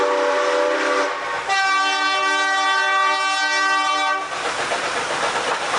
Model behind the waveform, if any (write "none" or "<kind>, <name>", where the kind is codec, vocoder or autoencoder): none